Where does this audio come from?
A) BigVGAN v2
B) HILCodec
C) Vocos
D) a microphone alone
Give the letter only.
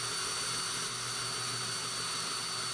D